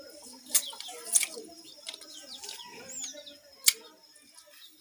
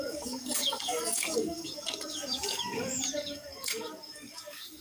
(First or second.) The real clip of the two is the first